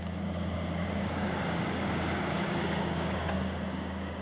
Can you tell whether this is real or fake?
fake